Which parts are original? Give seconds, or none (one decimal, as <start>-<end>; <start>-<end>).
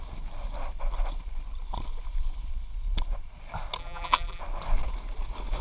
0.0-3.8; 4.4-5.6